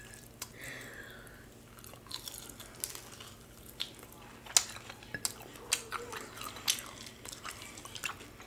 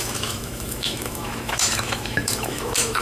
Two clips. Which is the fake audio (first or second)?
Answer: second